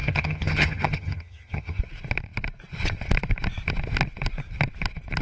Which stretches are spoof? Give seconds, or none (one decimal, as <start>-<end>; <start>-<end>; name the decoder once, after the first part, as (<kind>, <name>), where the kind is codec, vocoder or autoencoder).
0.0-1.8 (vocoder, HiFi-GAN)